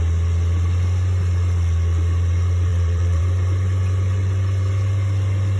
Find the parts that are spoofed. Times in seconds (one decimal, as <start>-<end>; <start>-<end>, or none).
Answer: 2.7-3.2